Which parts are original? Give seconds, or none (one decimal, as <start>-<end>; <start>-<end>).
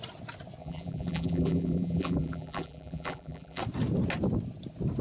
0.0-0.6; 3.6-5.0